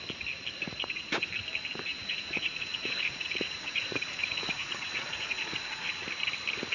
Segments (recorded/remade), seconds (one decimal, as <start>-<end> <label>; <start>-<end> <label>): 0.0-0.7 recorded; 0.7-1.3 remade; 1.3-1.9 recorded; 1.9-5.9 remade; 5.9-6.7 recorded